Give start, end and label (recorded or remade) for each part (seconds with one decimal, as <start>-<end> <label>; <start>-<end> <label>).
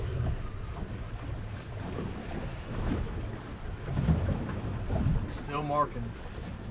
0.0-2.5 recorded; 2.5-3.2 remade; 3.2-6.7 recorded